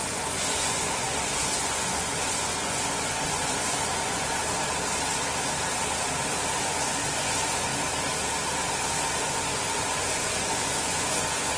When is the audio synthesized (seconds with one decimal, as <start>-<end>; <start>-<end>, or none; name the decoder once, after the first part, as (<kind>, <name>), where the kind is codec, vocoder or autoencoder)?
0.0-4.4 (vocoder, Vocos); 6.6-7.7; 9.2-11.6